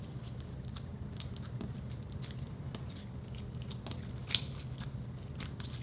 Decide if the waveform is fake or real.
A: real